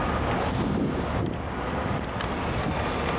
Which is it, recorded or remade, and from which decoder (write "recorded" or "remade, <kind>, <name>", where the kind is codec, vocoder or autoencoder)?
recorded